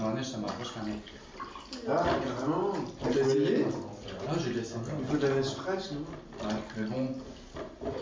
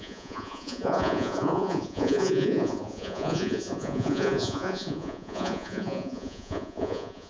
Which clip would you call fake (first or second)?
second